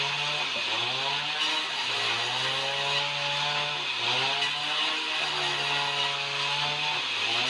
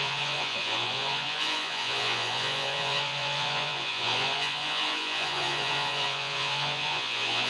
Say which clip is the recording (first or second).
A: first